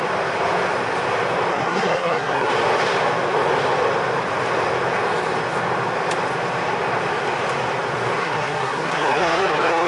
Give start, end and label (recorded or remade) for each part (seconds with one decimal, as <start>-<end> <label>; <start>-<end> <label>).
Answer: 0.0-1.5 recorded; 1.5-2.5 remade; 2.5-8.2 recorded; 8.2-9.9 remade